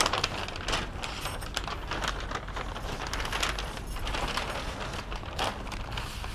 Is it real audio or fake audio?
real